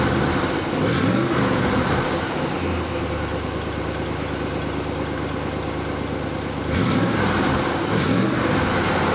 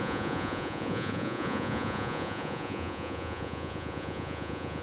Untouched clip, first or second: first